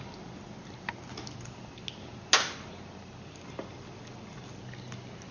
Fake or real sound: real